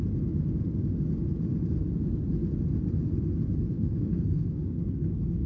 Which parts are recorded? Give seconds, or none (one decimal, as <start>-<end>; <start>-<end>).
0.0-3.7